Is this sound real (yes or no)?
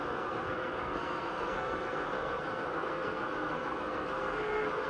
no